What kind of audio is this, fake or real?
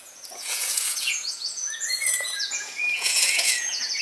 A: fake